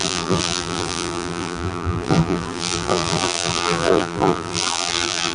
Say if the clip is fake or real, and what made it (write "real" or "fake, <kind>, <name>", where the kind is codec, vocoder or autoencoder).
fake, vocoder, BigVGAN v2